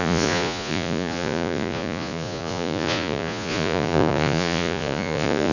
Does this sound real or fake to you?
fake